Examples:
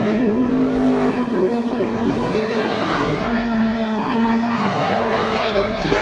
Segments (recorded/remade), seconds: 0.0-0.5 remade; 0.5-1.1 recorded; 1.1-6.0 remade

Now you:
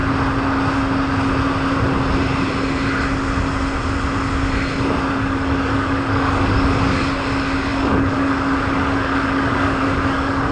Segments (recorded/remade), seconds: 0.0-5.1 recorded; 5.1-10.5 remade

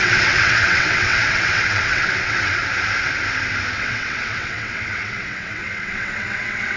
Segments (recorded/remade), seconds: 0.0-2.6 remade; 2.6-3.7 recorded; 3.7-6.8 remade

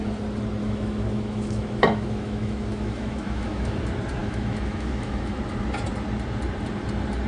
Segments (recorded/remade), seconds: 0.0-0.6 recorded; 0.6-3.8 remade; 3.8-4.2 recorded; 4.2-5.4 remade; 5.4-7.3 recorded

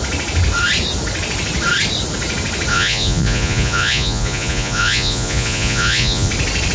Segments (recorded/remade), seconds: 0.0-2.7 recorded; 2.7-6.3 remade; 6.3-6.7 recorded

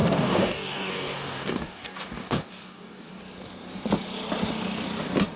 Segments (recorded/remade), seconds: 0.0-3.2 remade; 3.2-5.4 recorded

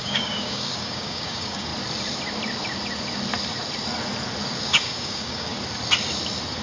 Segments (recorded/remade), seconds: 0.0-1.7 remade; 1.7-4.7 recorded; 4.7-5.5 remade; 5.5-6.6 recorded

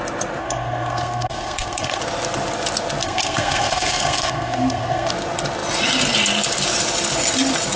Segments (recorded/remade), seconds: 0.0-0.4 recorded; 0.4-2.0 remade; 2.0-3.0 recorded; 3.0-5.1 remade; 5.1-7.8 recorded